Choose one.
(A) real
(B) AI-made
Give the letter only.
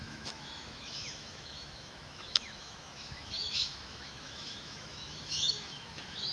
B